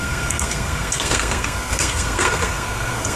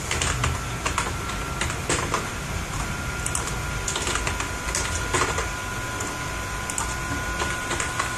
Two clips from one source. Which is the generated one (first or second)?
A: first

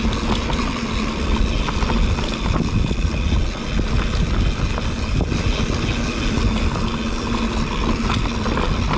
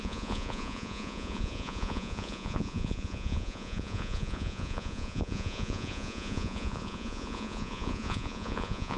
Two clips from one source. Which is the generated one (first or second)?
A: second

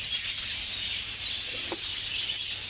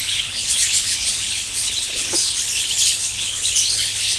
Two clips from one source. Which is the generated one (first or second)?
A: second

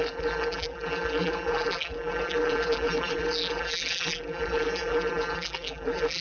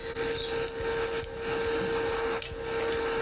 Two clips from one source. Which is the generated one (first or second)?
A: first